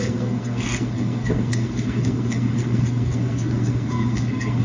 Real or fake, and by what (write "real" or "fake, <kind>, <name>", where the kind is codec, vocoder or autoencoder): fake, codec, SNAC